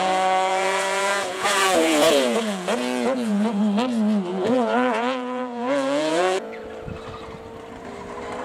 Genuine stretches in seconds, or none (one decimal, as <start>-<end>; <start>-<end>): 3.6-4.3; 6.6-8.4